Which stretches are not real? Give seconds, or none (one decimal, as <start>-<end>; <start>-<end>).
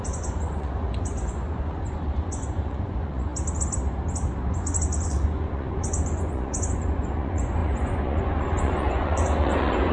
0.0-3.3; 4.5-9.9